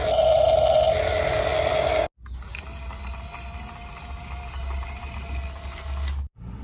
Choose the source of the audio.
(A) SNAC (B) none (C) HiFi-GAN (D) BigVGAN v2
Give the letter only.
B